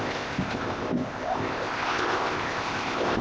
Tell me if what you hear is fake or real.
fake